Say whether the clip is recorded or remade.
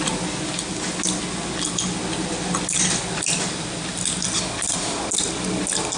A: recorded